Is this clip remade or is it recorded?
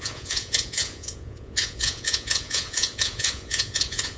remade